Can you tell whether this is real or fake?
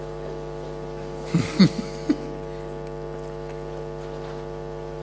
real